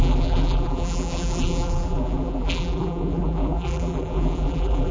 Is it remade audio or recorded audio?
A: remade